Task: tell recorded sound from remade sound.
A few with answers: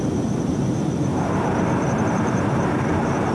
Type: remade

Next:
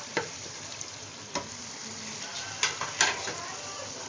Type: remade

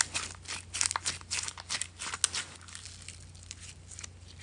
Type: recorded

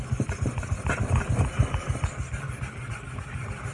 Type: recorded